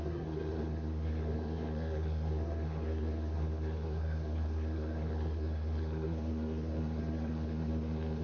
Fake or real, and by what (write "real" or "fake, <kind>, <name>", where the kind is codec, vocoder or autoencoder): fake, codec, SNAC